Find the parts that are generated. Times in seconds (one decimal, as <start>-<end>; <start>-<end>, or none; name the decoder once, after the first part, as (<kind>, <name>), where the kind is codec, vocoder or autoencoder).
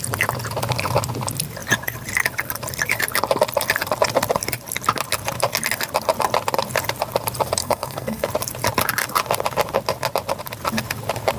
7.6-8.3 (codec, SNAC)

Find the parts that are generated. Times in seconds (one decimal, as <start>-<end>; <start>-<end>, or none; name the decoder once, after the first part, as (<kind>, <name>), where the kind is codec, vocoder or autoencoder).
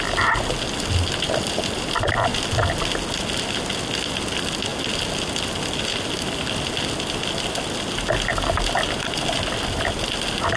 none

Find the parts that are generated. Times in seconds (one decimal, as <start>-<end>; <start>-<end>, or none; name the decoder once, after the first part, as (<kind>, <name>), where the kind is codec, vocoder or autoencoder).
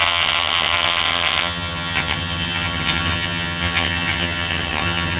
0.0-5.2 (vocoder, HiFi-GAN)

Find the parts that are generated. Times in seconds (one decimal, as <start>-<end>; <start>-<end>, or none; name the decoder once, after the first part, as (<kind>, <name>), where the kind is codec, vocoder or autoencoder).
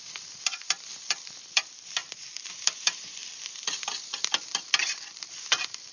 0.0-2.0 (vocoder, BigVGAN v2); 2.5-5.9